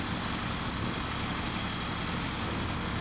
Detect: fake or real real